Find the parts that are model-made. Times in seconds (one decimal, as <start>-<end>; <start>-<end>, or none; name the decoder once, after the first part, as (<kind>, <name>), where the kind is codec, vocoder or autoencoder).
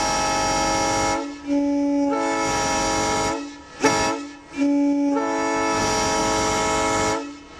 none